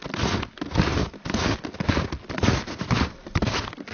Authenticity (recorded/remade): recorded